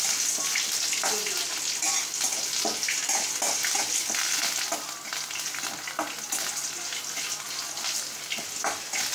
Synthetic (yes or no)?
no